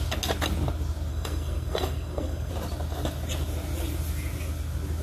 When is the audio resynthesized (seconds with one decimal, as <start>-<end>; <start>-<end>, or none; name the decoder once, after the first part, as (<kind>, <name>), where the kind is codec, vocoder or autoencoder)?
1.1-2.5 (codec, SNAC)